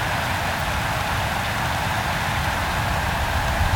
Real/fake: real